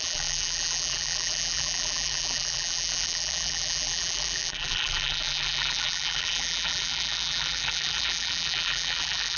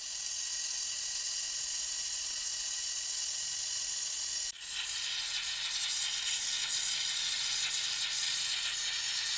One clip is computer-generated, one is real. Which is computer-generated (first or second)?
first